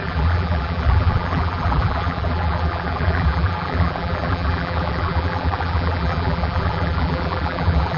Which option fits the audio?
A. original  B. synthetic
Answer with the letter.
B